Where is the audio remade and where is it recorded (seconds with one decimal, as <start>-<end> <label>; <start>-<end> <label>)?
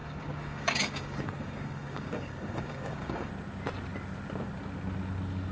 0.0-3.3 remade; 3.3-5.5 recorded